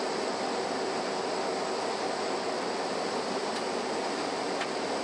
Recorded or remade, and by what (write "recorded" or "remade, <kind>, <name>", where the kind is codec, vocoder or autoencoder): recorded